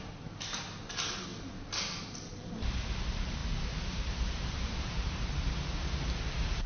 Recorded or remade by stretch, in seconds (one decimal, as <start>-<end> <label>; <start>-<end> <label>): 0.0-1.3 recorded; 1.3-2.5 remade; 2.5-3.4 recorded; 3.4-6.7 remade